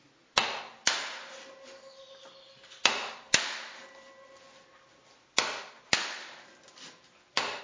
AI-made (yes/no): no